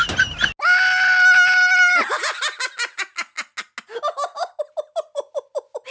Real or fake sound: real